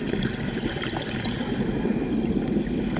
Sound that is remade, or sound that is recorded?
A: recorded